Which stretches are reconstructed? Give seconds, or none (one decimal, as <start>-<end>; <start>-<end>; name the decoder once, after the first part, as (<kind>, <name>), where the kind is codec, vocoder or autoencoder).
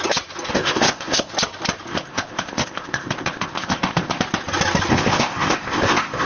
0.5-1.3 (codec, ZipCodec); 1.9-4.2; 4.9-6.3